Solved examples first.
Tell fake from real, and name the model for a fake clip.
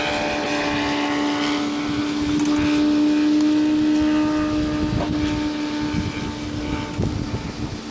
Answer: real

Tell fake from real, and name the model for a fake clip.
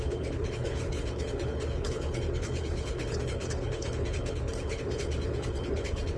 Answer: fake, codec, HILCodec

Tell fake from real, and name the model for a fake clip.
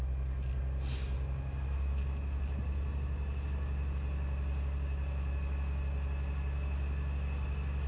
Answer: real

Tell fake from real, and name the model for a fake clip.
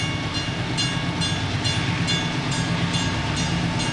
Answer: real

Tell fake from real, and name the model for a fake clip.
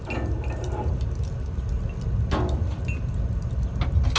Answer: real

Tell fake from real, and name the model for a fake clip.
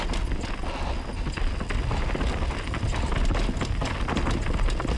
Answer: real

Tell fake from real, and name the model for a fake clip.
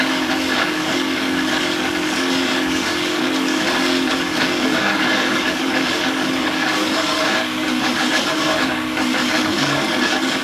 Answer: fake, codec, DAC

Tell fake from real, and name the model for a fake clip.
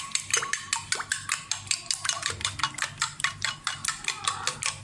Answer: real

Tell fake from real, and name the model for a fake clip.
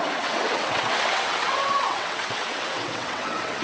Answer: fake, vocoder, WaveNeXt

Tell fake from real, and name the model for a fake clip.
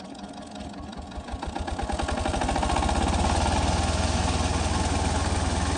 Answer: real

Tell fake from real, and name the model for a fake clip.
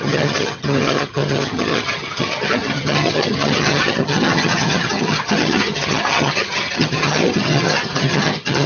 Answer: fake, vocoder, HiFi-GAN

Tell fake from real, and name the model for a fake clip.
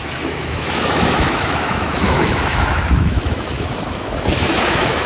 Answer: fake, autoencoder, DAC-VAE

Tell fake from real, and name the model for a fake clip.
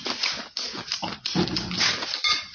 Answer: real